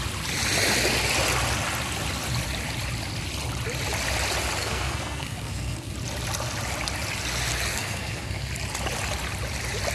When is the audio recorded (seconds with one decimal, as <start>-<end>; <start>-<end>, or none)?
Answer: 0.0-4.6; 5.9-7.7; 8.5-9.9